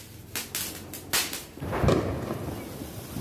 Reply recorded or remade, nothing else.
recorded